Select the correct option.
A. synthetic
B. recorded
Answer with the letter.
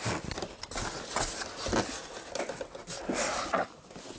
B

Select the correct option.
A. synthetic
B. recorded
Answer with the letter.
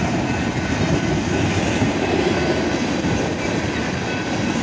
B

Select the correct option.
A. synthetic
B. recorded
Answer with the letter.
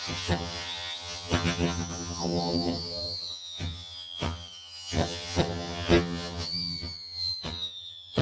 A